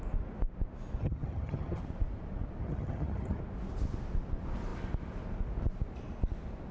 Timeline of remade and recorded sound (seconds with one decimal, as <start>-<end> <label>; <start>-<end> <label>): 0.0-1.0 recorded; 1.0-1.8 remade; 1.8-2.6 recorded; 2.6-3.4 remade; 3.4-6.7 recorded